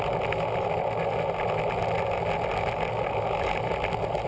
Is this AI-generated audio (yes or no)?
no